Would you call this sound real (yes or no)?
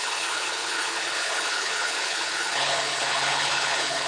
no